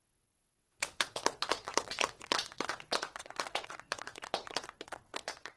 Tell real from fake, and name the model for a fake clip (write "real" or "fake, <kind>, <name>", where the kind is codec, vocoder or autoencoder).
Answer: fake, vocoder, WaveNeXt